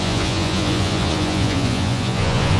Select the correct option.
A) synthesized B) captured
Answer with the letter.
A